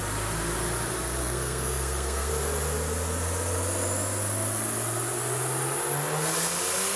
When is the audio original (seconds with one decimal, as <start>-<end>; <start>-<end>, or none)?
0.0-1.2; 2.3-7.0